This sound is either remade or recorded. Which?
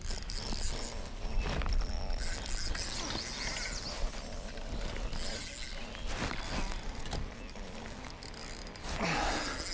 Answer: recorded